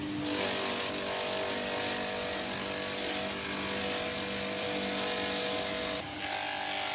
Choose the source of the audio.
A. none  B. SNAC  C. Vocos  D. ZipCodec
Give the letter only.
A